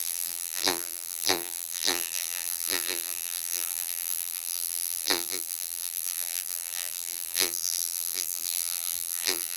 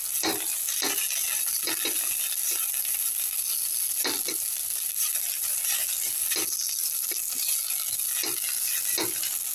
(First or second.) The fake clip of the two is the first